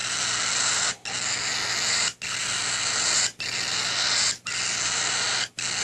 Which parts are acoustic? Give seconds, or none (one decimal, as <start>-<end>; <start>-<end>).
0.0-5.8